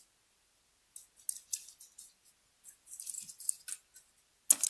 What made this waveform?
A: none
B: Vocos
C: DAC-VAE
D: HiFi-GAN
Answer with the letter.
A